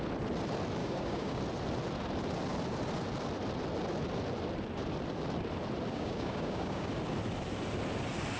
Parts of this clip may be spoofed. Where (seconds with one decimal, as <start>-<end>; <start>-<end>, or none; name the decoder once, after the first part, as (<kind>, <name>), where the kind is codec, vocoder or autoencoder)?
0.8-1.4 (codec, DAC); 5.9-6.9